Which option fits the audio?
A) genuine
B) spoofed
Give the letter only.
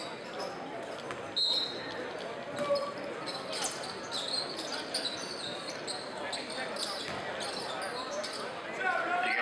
A